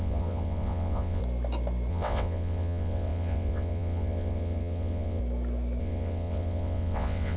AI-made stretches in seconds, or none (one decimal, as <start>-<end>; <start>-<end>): 0.0-1.2; 1.9-5.2; 5.8-7.4